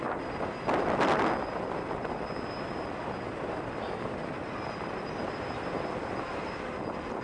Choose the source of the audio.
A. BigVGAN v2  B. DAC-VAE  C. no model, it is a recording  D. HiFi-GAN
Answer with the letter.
C